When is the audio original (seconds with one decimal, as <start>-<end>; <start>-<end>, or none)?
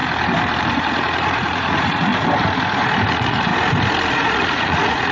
0.0-0.6; 2.1-3.1; 3.5-4.1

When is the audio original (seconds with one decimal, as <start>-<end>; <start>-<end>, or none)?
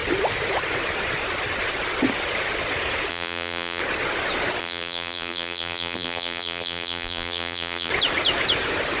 0.0-3.1; 3.8-4.6; 7.9-9.0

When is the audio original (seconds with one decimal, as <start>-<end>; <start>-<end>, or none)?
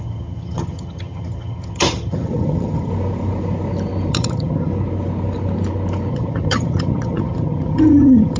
2.9-4.1; 4.7-6.1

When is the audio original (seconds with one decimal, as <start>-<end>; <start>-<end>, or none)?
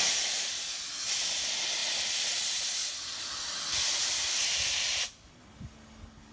0.0-2.8; 4.9-6.3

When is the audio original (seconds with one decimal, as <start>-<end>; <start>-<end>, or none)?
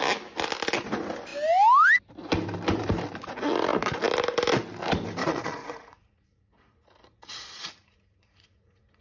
0.0-5.2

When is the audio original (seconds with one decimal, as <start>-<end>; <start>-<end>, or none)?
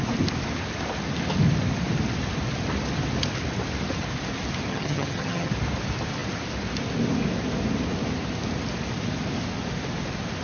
0.0-4.7; 5.5-10.4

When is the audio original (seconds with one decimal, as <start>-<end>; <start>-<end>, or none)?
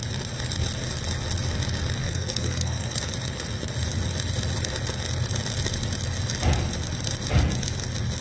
0.0-2.0; 3.0-8.2